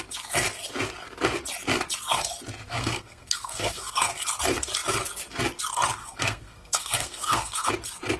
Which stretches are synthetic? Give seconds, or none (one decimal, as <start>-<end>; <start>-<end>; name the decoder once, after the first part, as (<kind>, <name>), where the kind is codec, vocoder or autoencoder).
2.7-4.1 (codec, SNAC); 6.0-7.7